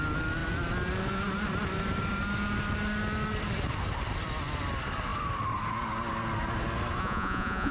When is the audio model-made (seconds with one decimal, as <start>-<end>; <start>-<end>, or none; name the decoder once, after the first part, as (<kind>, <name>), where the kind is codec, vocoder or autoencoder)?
7.0-7.7 (vocoder, Vocos)